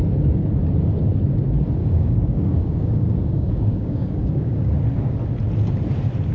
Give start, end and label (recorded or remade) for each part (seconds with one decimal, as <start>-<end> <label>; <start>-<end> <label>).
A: 0.0-1.8 recorded; 1.8-4.7 remade; 4.7-6.3 recorded